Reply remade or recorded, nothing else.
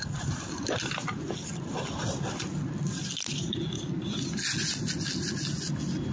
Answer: recorded